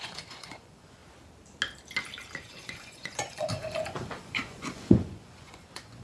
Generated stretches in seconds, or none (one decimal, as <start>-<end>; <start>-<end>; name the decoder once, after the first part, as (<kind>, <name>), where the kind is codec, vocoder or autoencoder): 0.0-1.0 (vocoder, Vocos); 2.4-6.0